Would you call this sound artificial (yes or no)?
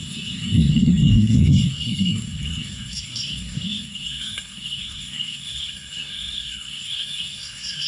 yes